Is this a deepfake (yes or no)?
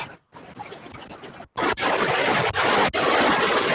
no